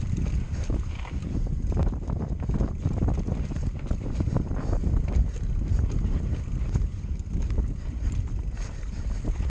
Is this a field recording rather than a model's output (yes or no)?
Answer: yes